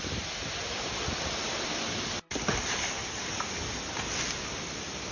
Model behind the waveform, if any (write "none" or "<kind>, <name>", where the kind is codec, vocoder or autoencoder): none